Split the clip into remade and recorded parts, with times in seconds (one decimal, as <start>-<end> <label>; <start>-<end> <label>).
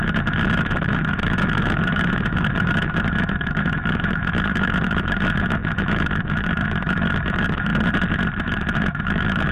0.0-7.7 remade; 7.7-8.4 recorded; 8.4-9.5 remade